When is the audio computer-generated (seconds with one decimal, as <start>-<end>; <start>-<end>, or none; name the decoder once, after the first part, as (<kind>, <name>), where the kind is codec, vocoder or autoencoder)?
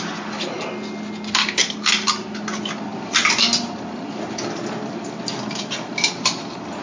none